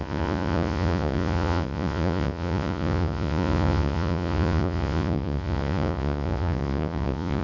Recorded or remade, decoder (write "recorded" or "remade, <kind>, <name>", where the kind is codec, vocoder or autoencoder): remade, vocoder, Vocos